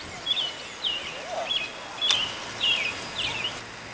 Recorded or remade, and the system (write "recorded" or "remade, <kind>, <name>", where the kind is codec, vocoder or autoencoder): recorded